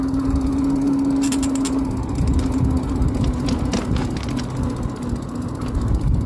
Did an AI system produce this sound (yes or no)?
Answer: no